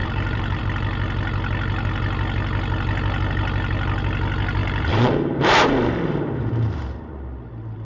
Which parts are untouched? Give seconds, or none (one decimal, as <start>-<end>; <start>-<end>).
0.6-4.6; 7.0-7.8